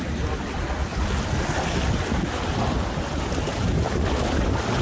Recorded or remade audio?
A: recorded